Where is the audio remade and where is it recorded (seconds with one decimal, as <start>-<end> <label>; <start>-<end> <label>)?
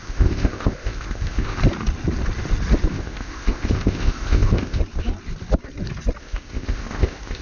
0.0-1.6 remade; 1.6-2.9 recorded; 2.9-4.8 remade; 4.8-6.2 recorded; 6.2-7.4 remade